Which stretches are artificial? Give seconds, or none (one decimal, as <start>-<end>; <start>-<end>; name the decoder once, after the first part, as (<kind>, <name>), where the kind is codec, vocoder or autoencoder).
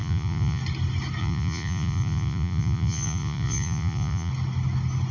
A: 0.0-0.6 (vocoder, Vocos); 1.2-4.3